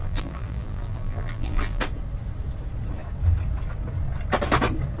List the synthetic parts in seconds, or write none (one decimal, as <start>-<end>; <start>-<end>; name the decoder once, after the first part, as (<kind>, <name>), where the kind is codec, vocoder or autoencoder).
0.0-1.8 (vocoder, BigVGAN v2)